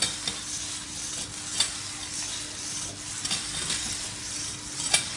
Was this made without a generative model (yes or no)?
yes